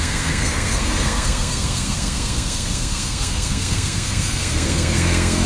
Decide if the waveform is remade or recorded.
remade